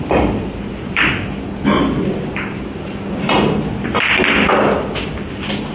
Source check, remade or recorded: recorded